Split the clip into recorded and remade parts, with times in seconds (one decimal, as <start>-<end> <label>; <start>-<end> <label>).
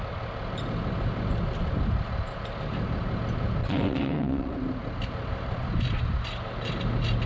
0.0-3.6 recorded; 3.6-4.5 remade; 4.5-7.3 recorded